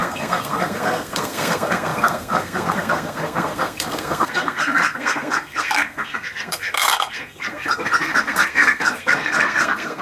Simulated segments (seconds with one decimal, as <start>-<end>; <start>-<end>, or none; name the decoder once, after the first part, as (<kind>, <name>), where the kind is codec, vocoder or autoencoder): 0.0-10.0 (codec, SNAC)

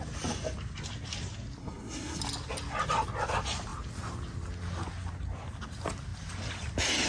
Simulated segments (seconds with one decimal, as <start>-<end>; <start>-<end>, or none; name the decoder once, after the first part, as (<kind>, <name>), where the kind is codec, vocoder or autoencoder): 1.6-2.2 (codec, SNAC)

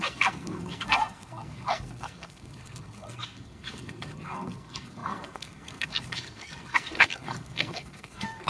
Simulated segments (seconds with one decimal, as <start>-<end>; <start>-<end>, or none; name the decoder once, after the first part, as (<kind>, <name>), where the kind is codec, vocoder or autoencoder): 0.0-8.5 (codec, SNAC)